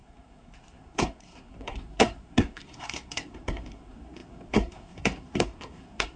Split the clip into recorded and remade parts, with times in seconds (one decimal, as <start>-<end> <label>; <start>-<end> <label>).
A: 0.0-6.2 remade